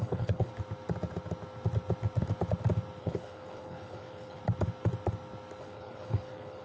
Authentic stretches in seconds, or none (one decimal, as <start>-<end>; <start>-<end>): 0.5-3.0; 4.4-5.6